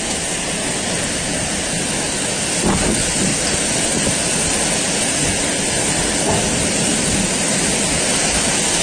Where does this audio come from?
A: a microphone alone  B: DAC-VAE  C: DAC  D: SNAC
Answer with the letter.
A